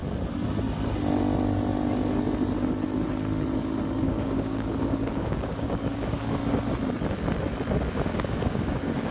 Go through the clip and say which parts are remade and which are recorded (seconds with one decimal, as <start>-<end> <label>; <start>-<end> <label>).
0.0-4.0 recorded; 4.0-6.4 remade; 6.4-7.9 recorded; 7.9-9.1 remade